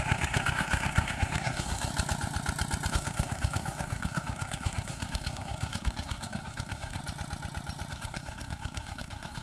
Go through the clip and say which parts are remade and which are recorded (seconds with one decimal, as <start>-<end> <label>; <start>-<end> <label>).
0.0-1.9 remade; 1.9-2.9 recorded; 2.9-7.0 remade; 7.0-7.9 recorded; 7.9-9.4 remade